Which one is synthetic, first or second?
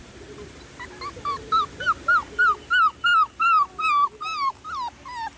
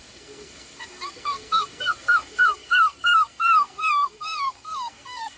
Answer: second